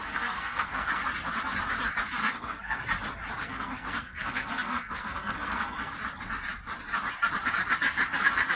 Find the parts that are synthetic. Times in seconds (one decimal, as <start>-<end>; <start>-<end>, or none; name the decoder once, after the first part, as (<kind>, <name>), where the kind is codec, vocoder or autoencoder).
0.0-1.0 (codec, SNAC); 2.2-2.8; 3.4-5.9